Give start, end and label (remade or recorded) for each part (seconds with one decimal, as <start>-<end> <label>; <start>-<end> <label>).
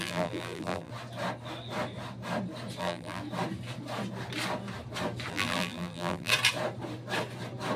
0.0-0.9 remade; 0.9-2.8 recorded; 2.8-3.2 remade; 3.2-5.3 recorded; 5.3-6.3 remade; 6.3-7.8 recorded